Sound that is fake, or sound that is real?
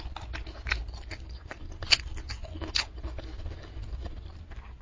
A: real